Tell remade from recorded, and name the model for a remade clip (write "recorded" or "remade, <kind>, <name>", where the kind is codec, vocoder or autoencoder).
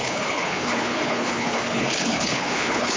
remade, codec, HILCodec